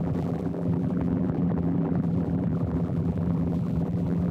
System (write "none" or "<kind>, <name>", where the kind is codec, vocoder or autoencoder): vocoder, BigVGAN v2